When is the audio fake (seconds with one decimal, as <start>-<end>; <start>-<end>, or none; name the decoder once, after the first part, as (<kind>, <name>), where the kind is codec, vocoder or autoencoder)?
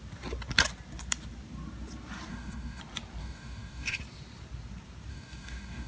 2.3-2.8 (codec, DAC); 3.2-4.0; 5.1-5.9